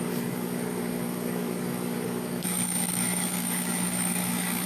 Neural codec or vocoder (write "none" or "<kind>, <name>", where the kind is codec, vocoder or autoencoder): codec, DAC